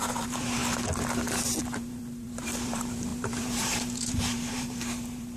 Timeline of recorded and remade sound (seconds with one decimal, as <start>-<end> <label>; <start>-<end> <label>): 0.0-0.6 remade; 0.6-1.6 recorded; 1.6-5.4 remade

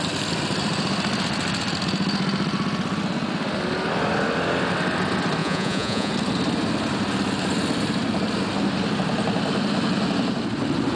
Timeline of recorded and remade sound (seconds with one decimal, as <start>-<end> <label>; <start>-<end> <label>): 0.0-5.4 recorded; 5.4-6.1 remade; 6.1-11.0 recorded

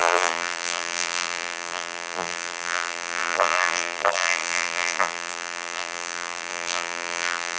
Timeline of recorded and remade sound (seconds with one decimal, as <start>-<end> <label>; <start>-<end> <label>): 0.0-7.6 remade

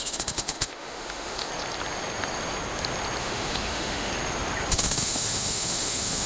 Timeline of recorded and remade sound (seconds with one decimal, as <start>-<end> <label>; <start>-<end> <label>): 0.0-1.5 remade; 1.5-3.2 recorded; 3.2-4.1 remade; 4.1-4.7 recorded; 4.7-6.3 remade

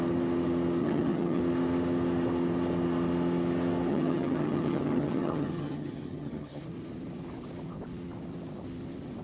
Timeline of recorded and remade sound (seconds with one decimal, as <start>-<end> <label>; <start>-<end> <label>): 0.0-0.8 recorded; 0.8-1.4 remade; 1.4-3.9 recorded; 3.9-6.6 remade; 6.6-9.2 recorded

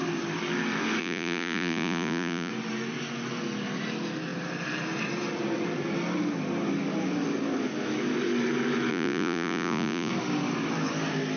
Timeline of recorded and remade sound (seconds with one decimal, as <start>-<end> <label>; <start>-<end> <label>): 0.0-1.0 recorded; 1.0-2.5 remade; 2.5-8.9 recorded; 8.9-10.1 remade; 10.1-11.4 recorded